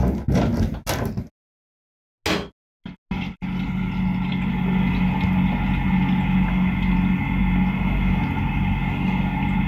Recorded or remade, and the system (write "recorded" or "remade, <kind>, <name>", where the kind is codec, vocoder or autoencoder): recorded